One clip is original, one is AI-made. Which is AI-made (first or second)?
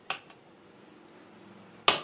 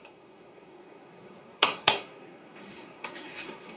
second